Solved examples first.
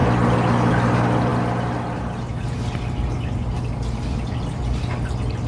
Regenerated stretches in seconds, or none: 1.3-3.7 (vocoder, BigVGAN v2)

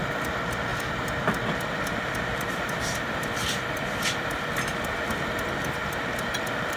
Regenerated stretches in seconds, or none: 0.0-0.7 (vocoder, BigVGAN v2); 1.4-6.8